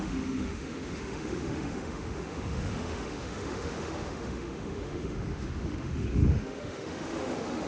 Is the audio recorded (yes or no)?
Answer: no